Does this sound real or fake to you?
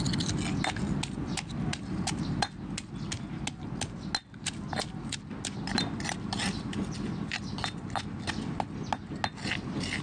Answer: real